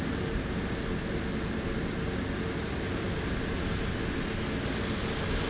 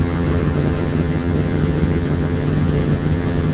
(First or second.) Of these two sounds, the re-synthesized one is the second